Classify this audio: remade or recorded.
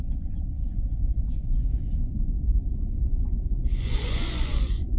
remade